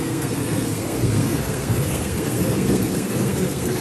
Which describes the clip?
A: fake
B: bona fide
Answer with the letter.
A